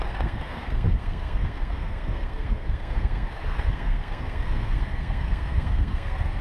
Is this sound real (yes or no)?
no